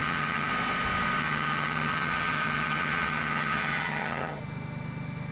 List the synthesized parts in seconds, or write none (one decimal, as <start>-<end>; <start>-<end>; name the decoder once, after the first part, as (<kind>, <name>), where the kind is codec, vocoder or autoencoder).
0.0-0.5 (vocoder, HiFi-GAN); 1.2-4.4